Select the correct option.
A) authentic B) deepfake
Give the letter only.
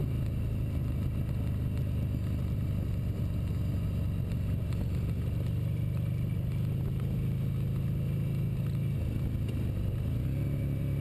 A